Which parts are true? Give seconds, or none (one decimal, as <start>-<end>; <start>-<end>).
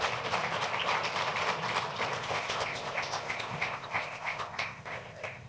0.0-2.2